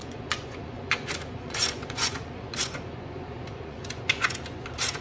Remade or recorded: remade